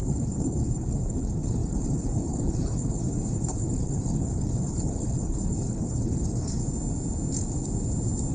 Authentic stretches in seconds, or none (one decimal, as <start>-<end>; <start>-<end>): 6.6-8.3